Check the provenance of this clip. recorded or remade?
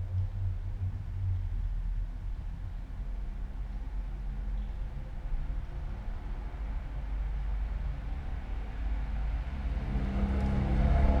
recorded